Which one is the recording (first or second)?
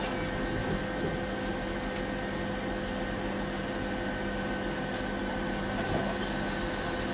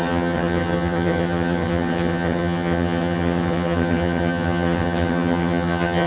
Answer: first